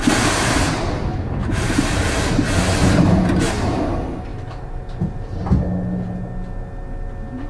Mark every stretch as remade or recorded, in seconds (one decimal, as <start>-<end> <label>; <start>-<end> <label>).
0.0-1.4 recorded; 1.4-3.8 remade; 3.8-7.5 recorded